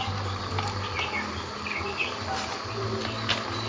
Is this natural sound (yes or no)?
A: yes